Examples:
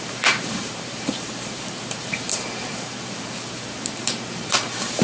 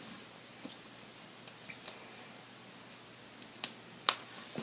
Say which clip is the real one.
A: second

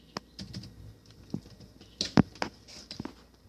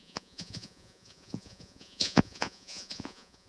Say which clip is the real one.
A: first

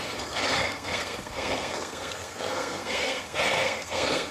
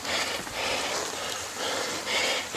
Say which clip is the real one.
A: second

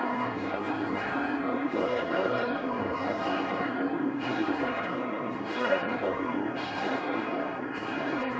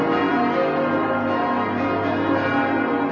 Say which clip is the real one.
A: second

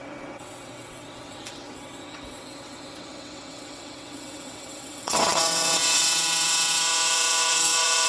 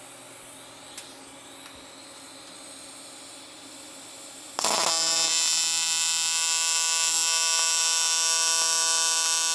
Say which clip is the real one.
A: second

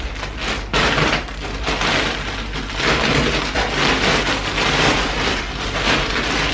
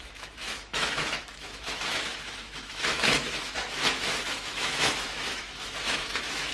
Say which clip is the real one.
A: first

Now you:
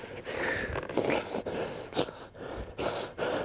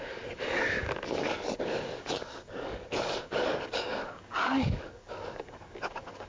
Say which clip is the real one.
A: first